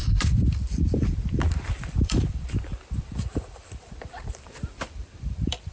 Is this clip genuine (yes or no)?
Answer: no